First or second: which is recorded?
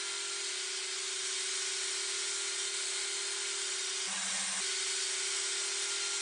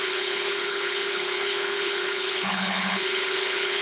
first